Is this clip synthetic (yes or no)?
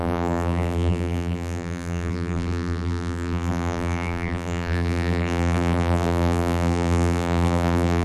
yes